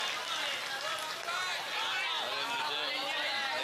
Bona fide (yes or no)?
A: yes